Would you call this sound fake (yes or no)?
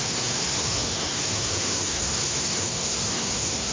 yes